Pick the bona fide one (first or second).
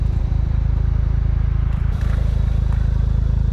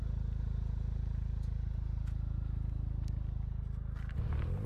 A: second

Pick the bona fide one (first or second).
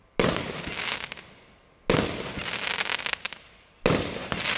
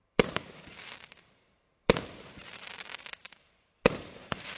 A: first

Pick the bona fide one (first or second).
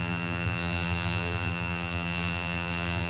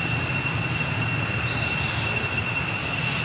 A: second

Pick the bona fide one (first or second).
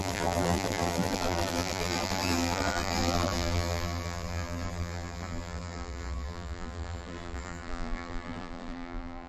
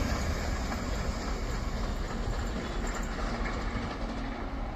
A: second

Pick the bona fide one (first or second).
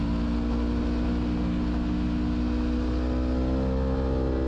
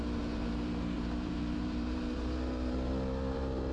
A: first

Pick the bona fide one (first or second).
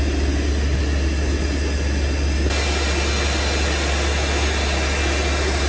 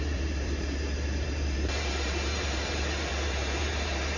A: first